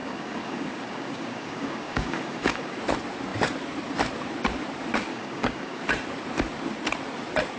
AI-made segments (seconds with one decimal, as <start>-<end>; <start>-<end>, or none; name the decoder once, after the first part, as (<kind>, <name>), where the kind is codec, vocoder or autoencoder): 0.0-2.8 (codec, DAC); 5.1-5.8